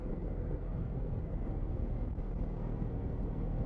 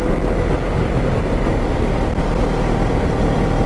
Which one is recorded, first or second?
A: second